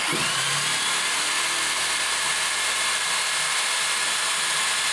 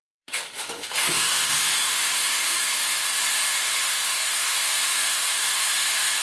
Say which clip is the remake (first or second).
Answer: second